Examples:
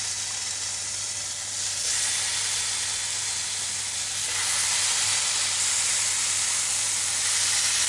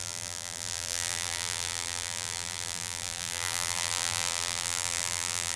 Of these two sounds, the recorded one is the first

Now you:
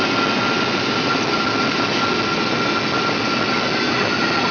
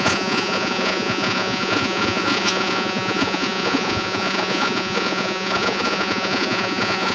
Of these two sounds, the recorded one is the first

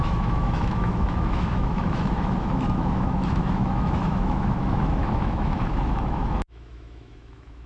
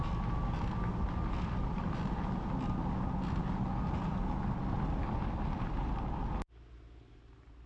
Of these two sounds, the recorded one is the second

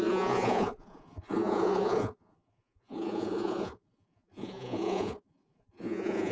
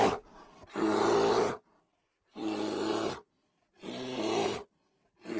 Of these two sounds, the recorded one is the second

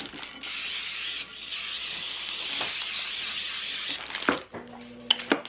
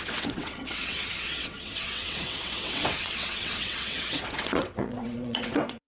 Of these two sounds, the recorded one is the first